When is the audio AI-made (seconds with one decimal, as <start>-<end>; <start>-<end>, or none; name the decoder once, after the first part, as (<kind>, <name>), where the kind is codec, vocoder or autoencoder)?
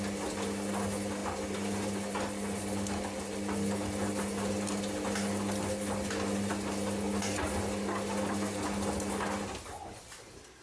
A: none